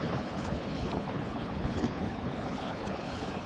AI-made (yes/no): yes